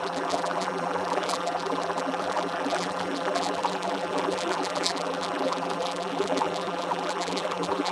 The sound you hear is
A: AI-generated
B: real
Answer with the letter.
A